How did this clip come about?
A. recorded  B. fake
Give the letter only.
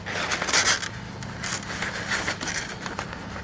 A